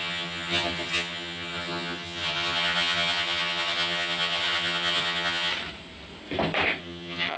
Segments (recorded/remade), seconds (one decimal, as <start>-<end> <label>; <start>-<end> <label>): 0.0-5.5 remade; 5.5-6.8 recorded; 6.8-7.4 remade

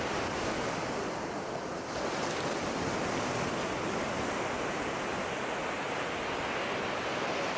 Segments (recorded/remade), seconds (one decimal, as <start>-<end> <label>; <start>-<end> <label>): 0.0-7.6 recorded